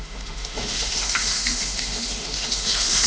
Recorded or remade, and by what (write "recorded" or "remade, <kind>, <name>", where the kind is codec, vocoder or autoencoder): remade, autoencoder, DAC-VAE